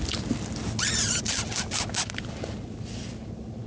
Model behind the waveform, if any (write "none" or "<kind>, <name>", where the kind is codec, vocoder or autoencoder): none